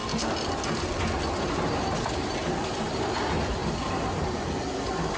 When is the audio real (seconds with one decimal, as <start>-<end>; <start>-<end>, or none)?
0.0-1.4